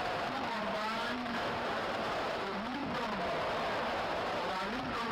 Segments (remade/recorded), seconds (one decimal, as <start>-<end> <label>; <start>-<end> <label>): 0.0-2.8 remade; 2.8-3.9 recorded; 3.9-5.1 remade